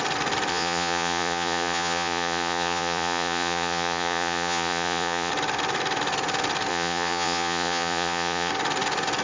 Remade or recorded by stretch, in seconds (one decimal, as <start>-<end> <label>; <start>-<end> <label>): 0.0-0.5 recorded; 0.5-5.3 remade; 5.3-6.7 recorded; 6.7-8.5 remade; 8.5-9.2 recorded